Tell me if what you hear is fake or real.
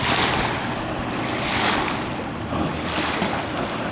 real